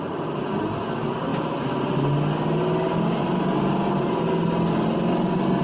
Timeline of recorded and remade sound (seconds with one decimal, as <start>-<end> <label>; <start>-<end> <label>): 0.0-5.6 recorded